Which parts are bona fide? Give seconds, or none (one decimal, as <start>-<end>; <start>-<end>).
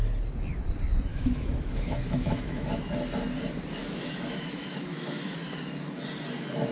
0.0-1.1; 2.9-3.8; 5.3-6.7